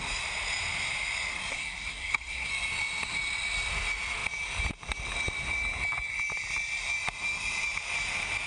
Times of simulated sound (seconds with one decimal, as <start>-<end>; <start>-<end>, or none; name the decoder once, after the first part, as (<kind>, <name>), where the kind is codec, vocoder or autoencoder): 1.5-2.5 (codec, SNAC)

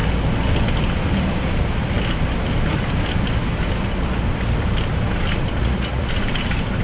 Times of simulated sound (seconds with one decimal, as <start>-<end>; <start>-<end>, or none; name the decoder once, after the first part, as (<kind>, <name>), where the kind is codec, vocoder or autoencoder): 5.6-6.1 (vocoder, Vocos)

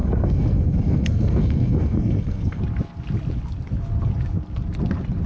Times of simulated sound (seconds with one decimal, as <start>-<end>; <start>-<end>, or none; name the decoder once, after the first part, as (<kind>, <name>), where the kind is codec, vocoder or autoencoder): 0.0-2.6 (codec, SNAC)

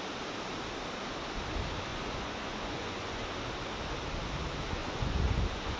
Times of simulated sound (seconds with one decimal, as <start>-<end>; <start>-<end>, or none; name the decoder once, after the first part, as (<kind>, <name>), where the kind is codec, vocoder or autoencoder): 1.9-3.2 (vocoder, Vocos); 4.8-5.8

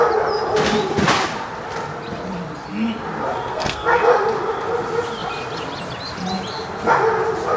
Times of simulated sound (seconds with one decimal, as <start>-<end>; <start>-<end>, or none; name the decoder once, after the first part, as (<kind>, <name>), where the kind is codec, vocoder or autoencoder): 3.5-4.0 (codec, SNAC)

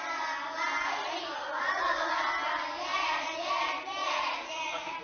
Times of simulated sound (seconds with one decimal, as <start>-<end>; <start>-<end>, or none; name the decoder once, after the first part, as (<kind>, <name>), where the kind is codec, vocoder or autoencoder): 1.3-2.2 (vocoder, Vocos); 2.9-3.5; 4.0-5.0